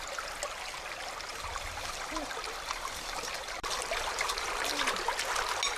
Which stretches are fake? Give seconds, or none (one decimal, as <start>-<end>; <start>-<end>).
1.3-4.8